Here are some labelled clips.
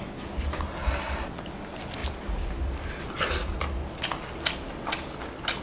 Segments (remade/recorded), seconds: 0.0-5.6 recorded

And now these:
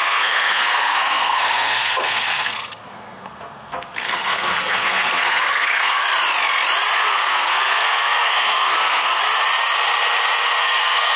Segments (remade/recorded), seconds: 0.0-6.0 remade; 6.0-7.0 recorded; 7.0-9.2 remade; 9.2-10.6 recorded; 10.6-11.2 remade

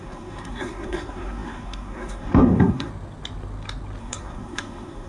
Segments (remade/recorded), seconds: 0.0-2.9 remade; 2.9-4.0 recorded; 4.0-5.1 remade

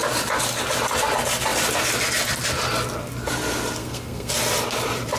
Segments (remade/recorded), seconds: 0.0-3.8 recorded; 3.8-4.3 remade; 4.3-5.2 recorded

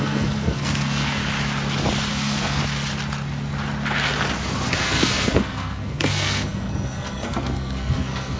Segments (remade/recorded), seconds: 0.0-1.2 remade; 1.2-2.1 recorded; 2.1-2.6 remade; 2.6-4.7 recorded; 4.7-8.4 remade

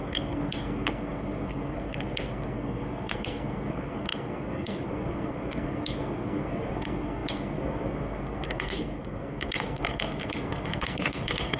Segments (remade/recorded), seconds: 0.0-11.6 remade